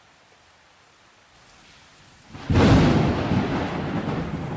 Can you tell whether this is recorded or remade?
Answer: recorded